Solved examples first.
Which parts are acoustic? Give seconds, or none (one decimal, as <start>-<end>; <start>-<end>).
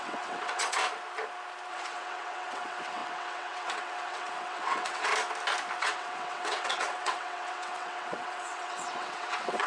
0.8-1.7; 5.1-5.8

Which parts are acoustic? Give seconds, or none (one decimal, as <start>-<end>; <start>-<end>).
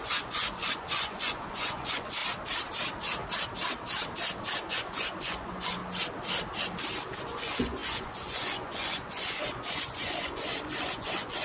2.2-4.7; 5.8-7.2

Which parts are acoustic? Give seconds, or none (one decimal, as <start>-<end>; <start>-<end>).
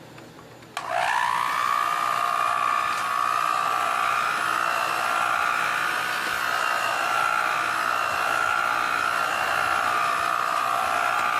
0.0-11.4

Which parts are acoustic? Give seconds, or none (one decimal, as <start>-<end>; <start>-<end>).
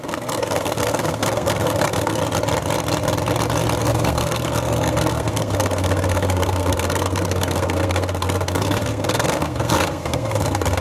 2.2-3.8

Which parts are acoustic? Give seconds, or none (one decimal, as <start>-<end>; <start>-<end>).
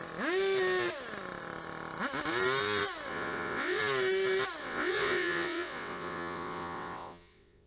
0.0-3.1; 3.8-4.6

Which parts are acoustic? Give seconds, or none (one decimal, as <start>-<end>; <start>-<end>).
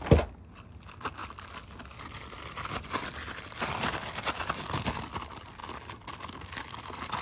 0.0-7.2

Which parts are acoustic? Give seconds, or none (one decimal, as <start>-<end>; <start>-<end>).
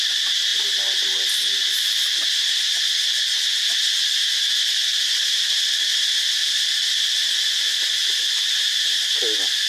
0.0-9.7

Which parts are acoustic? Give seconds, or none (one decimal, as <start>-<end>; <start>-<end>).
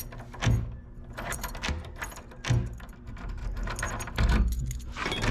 0.0-5.3